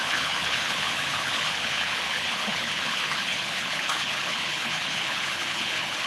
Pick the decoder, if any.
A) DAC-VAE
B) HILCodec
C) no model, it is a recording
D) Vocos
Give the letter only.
B